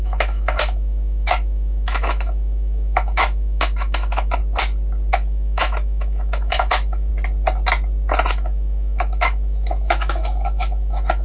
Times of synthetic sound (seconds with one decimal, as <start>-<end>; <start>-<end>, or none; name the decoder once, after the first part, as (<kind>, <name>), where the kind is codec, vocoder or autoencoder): 0.0-4.4 (autoencoder, DAC-VAE); 5.1-7.1; 8.3-11.2